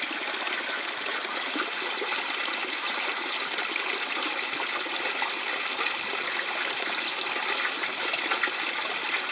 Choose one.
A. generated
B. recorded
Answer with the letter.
B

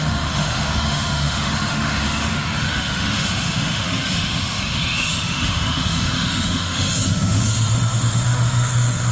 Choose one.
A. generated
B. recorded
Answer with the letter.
A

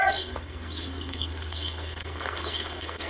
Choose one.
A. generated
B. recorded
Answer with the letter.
A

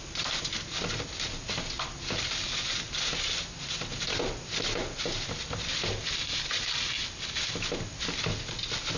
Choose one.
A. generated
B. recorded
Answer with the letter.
B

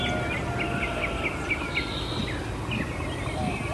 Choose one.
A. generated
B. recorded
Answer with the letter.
B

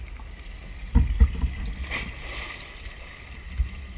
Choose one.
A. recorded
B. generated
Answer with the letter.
A